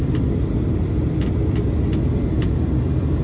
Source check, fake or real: real